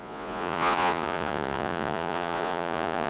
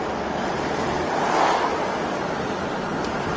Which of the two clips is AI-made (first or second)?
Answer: first